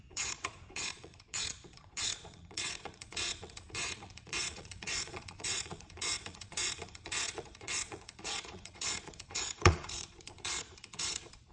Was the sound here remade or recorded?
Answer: remade